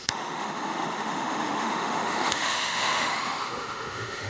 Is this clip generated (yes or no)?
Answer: yes